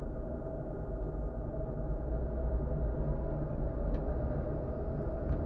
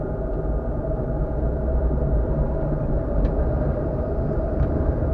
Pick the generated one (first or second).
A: second